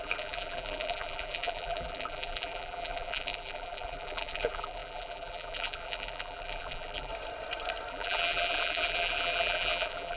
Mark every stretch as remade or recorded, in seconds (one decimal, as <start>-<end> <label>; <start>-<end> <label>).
0.0-7.1 remade; 7.1-7.9 recorded; 7.9-10.2 remade